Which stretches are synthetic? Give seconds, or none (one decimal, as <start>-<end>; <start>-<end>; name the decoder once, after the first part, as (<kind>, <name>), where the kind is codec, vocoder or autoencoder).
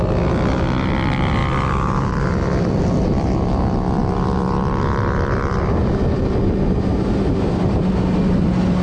6.9-7.9 (vocoder, BigVGAN v2)